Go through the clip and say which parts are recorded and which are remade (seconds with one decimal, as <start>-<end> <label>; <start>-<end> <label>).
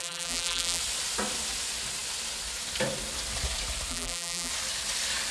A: 0.0-0.8 remade; 0.8-3.9 recorded; 3.9-4.5 remade; 4.5-5.3 recorded